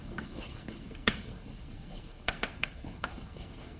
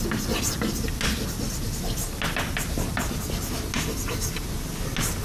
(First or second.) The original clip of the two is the second